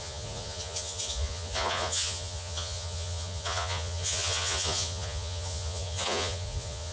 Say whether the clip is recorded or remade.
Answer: remade